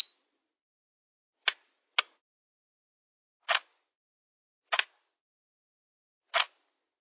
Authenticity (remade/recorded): recorded